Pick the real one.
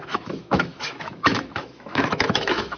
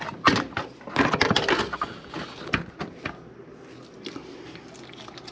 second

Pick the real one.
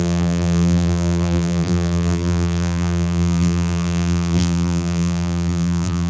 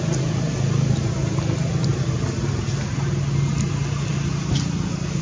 second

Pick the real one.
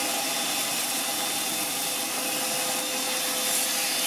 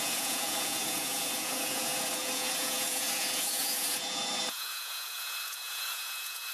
first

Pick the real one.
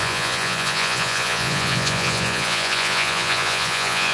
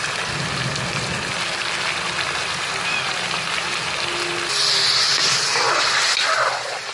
second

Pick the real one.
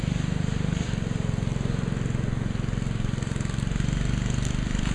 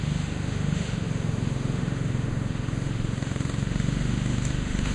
first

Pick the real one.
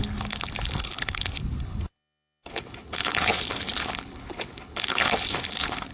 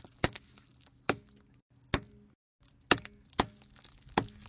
second